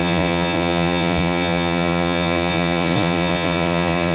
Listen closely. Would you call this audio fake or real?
fake